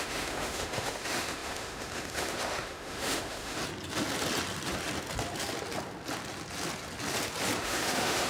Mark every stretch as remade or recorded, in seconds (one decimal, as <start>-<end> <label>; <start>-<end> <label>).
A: 0.0-3.6 remade; 3.6-7.6 recorded; 7.6-8.3 remade